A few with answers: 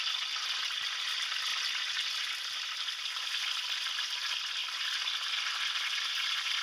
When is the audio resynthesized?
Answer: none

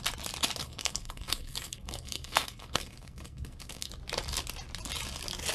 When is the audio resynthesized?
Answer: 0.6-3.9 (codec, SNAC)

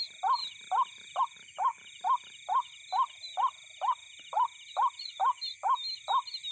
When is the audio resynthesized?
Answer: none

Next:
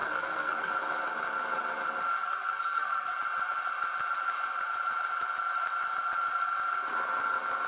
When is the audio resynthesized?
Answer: 0.0-0.7 (codec, SNAC); 2.2-3.1

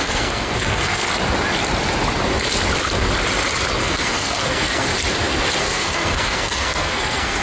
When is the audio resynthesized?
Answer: 0.0-1.1 (codec, SNAC); 3.8-4.9; 5.6-7.4

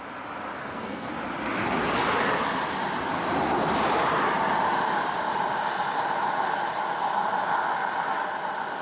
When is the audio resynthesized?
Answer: 0.6-1.1 (codec, SNAC)